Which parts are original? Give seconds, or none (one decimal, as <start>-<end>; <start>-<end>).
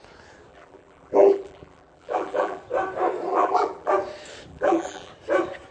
0.0-0.5; 2.6-3.3; 3.9-4.5; 5.1-5.7